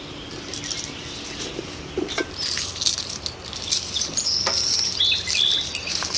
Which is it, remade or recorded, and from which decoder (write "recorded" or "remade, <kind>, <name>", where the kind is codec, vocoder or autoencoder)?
recorded